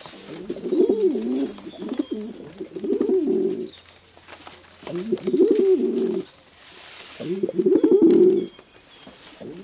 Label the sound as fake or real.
real